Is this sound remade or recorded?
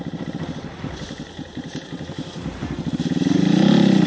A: remade